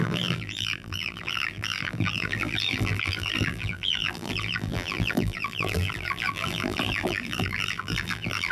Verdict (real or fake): fake